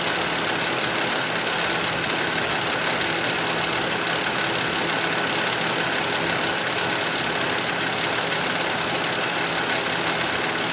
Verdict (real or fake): real